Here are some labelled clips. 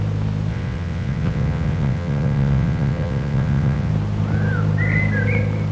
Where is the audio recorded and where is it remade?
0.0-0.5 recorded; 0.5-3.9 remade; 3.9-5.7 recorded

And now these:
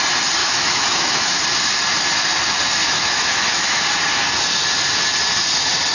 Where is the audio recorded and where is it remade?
0.0-0.4 recorded; 0.4-1.4 remade; 1.4-2.8 recorded; 2.8-3.8 remade; 3.8-5.9 recorded

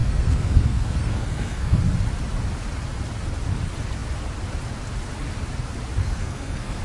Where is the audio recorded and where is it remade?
0.0-1.8 remade; 1.8-6.0 recorded; 6.0-6.8 remade

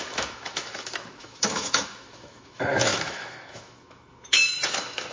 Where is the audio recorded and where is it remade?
0.0-5.1 remade

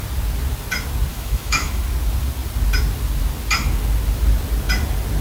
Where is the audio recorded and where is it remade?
0.0-1.1 recorded; 1.1-1.8 remade; 1.8-5.2 recorded

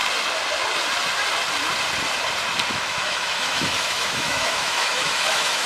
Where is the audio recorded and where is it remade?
0.0-2.7 recorded; 2.7-5.7 remade

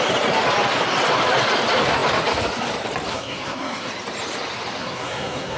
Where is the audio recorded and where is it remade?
0.0-3.1 recorded; 3.1-3.9 remade; 3.9-4.8 recorded; 4.8-5.6 remade

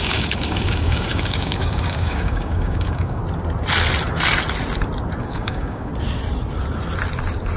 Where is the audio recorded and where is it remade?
0.0-3.2 remade; 3.2-5.2 recorded; 5.2-5.9 remade; 5.9-7.6 recorded